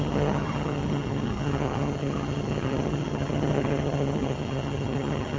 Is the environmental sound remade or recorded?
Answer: remade